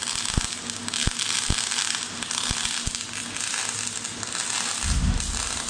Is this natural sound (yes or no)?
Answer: yes